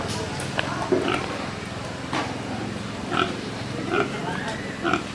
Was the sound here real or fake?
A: real